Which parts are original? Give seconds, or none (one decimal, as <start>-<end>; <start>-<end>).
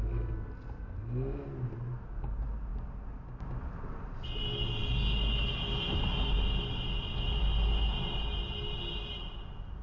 0.0-9.8